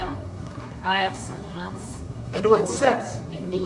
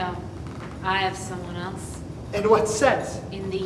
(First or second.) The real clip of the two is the second